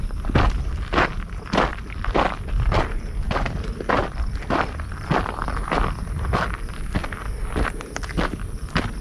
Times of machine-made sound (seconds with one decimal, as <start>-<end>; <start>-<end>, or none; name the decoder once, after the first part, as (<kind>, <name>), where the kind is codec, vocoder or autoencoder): 1.7-2.4 (vocoder, BigVGAN v2); 4.0-6.2